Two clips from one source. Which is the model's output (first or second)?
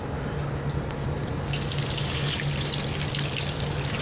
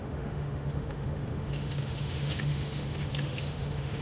second